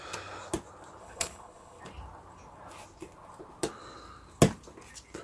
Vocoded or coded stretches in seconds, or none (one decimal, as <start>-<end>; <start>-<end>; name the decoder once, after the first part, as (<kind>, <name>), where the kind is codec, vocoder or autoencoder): 1.0-1.8 (codec, HILCodec)